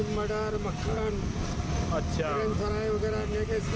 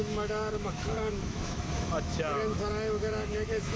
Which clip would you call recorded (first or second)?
first